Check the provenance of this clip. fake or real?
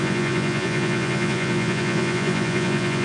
fake